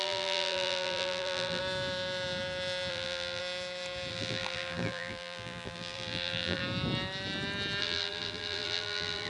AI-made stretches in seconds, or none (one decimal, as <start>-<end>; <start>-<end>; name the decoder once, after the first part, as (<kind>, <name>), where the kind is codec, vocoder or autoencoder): 0.0-1.6 (vocoder, BigVGAN v2); 2.9-3.4; 4.1-6.6; 7.8-9.3